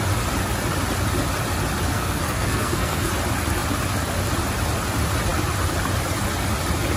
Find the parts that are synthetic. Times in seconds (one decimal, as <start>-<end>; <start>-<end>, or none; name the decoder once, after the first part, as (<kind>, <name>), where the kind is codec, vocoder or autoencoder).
1.9-3.1 (codec, SNAC)